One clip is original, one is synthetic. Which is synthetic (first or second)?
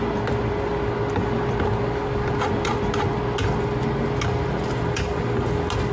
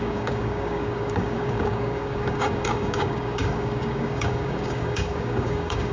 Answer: second